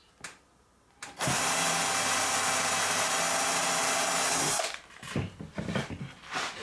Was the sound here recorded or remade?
recorded